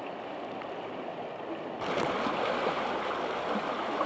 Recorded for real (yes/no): yes